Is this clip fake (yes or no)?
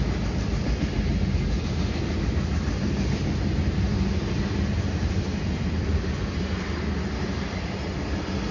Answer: no